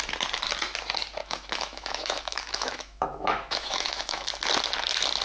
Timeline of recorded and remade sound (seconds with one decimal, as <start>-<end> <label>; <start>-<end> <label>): 0.0-1.2 recorded; 1.2-4.3 remade; 4.3-5.2 recorded